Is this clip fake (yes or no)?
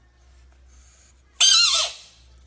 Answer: no